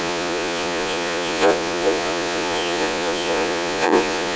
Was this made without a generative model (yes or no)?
no